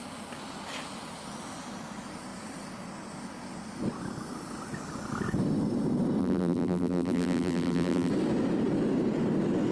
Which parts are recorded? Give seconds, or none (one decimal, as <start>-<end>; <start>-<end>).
0.0-6.2; 8.1-9.7